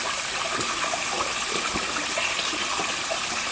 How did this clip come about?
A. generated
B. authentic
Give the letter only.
B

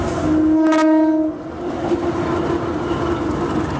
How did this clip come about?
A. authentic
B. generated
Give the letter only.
A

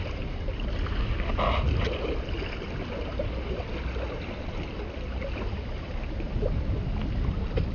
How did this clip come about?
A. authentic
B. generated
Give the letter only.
A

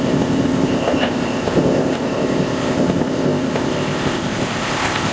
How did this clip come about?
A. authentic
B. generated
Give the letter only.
B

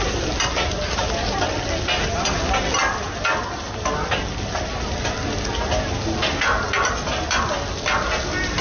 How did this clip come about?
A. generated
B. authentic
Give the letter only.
B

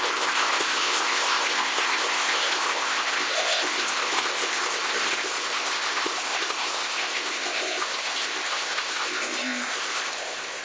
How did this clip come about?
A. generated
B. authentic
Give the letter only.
A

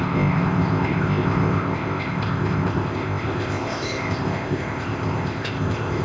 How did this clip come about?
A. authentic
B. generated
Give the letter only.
B